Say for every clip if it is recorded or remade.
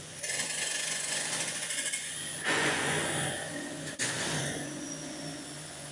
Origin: remade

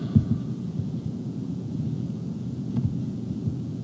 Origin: remade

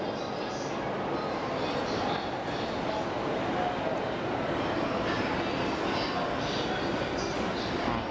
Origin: recorded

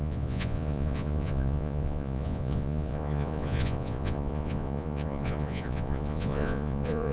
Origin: remade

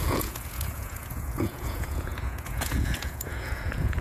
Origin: remade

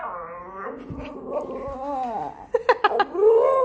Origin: recorded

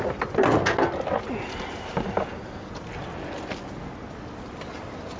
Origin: recorded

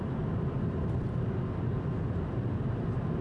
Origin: recorded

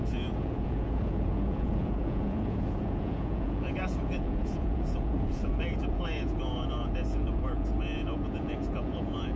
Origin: remade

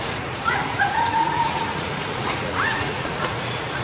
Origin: remade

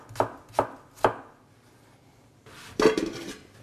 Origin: recorded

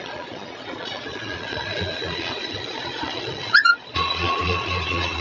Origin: remade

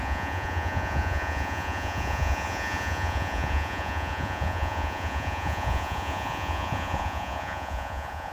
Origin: remade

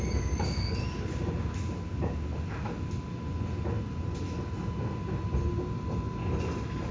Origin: recorded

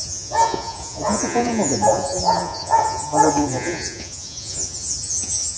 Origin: remade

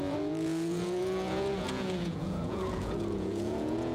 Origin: remade